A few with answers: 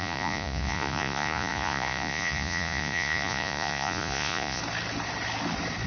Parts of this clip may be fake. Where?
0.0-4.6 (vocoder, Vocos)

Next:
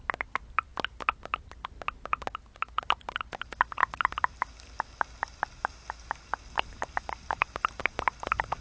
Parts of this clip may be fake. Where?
none

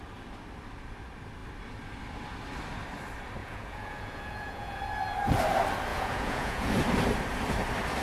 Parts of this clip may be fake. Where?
3.4-4.8 (vocoder, Vocos); 5.9-6.7

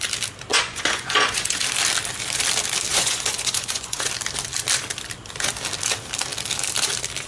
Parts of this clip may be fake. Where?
0.5-1.6 (vocoder, Vocos); 2.9-4.1

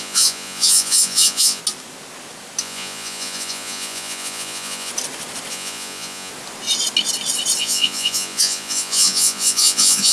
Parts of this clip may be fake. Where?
0.0-1.6 (vocoder, Vocos); 2.6-4.9; 5.5-6.3; 7.6-10.1

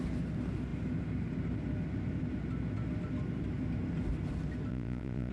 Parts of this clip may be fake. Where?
4.7-5.3 (vocoder, Vocos)